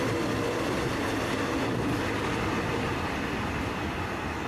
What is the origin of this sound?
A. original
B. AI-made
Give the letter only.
A